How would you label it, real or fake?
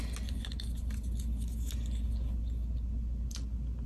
real